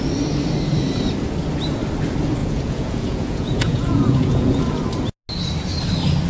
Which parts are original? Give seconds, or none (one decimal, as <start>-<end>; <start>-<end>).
0.0-2.4; 4.6-6.3